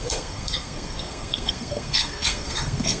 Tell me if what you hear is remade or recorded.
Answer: remade